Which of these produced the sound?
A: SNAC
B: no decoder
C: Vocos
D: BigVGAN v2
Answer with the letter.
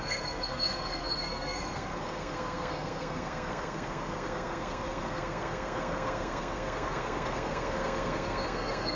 A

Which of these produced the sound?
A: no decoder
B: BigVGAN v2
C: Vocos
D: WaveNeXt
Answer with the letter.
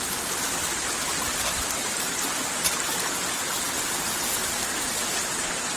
A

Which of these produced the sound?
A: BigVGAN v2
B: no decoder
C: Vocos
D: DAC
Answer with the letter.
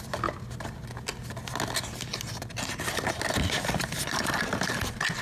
B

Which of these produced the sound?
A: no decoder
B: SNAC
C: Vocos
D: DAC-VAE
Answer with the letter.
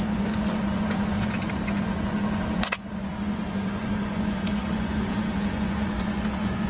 C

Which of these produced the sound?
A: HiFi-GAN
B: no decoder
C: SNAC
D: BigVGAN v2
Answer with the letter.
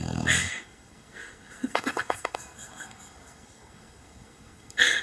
C